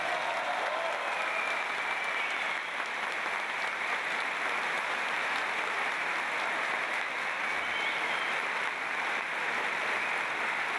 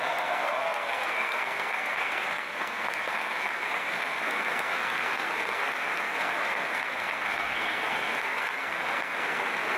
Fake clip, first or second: second